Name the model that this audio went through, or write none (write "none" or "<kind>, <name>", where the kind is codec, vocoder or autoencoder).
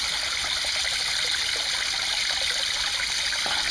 none